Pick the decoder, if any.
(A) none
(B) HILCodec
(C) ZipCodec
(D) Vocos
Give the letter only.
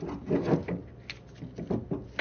A